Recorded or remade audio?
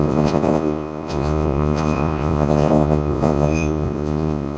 remade